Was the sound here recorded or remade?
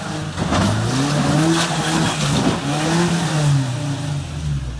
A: recorded